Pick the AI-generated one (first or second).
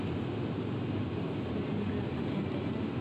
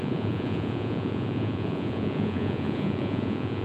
second